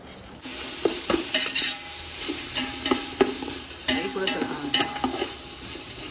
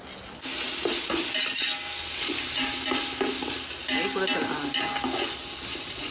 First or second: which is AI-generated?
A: first